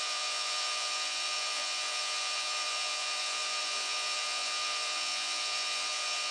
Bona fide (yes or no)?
no